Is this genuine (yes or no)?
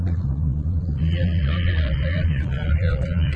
no